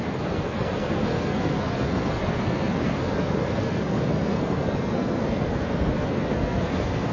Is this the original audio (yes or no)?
no